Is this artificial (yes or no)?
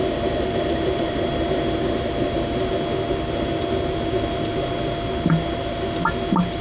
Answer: no